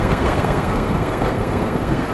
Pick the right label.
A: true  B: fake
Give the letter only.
B